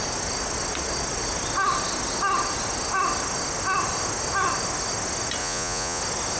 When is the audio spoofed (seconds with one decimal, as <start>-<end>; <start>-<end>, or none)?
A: 5.4-6.0